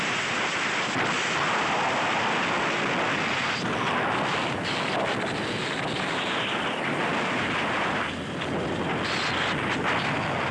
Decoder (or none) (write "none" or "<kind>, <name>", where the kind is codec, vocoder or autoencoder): none